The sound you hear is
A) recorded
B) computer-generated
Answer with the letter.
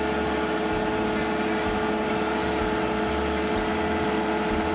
A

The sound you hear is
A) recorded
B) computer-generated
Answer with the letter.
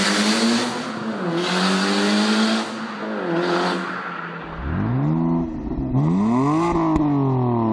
A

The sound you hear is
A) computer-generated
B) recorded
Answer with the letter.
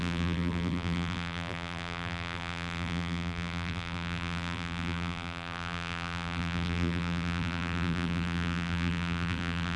A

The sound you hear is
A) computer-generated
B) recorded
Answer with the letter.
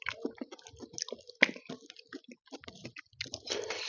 B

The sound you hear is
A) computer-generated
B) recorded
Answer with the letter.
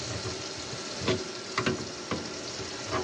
B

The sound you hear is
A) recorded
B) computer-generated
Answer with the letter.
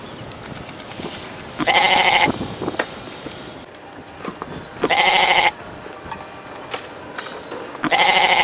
A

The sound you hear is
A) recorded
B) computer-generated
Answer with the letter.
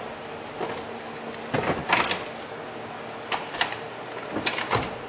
A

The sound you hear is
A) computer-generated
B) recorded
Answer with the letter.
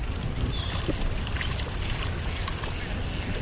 B